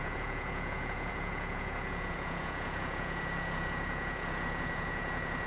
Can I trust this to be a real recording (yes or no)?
no